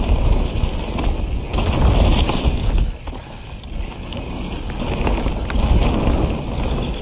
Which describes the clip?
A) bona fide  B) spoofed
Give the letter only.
A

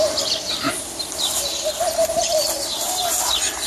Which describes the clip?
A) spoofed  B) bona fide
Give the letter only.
B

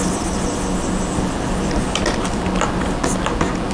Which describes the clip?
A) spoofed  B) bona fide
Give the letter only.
B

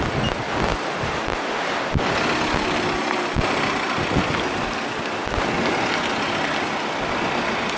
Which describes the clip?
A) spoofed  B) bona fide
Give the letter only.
B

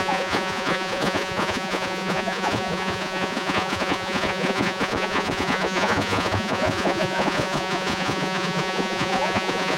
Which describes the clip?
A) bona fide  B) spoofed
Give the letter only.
B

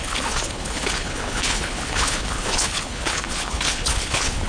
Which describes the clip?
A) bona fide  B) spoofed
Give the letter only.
B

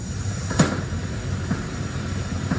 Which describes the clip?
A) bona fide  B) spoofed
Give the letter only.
B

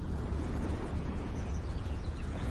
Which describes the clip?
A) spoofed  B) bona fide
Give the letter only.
A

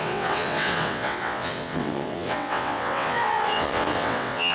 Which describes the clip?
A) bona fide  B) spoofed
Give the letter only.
B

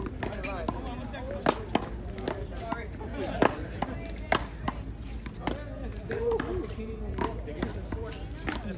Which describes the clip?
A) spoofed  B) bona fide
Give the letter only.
B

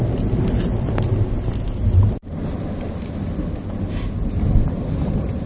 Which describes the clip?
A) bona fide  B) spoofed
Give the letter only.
A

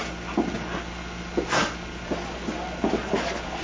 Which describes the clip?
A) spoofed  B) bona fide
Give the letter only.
B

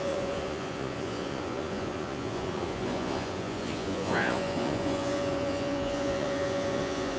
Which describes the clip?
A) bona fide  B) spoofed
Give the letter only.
B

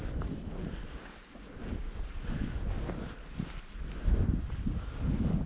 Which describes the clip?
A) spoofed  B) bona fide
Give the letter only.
B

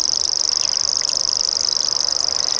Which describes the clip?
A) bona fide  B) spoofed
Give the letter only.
A